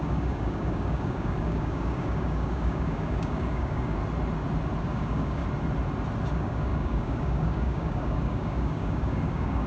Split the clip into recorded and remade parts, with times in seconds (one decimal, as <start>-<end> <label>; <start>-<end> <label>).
0.0-4.0 remade; 4.0-4.8 recorded; 4.8-5.4 remade; 5.4-6.3 recorded; 6.3-9.7 remade